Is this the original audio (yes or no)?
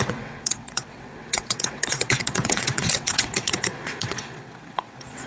no